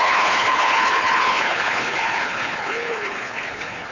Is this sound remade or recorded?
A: remade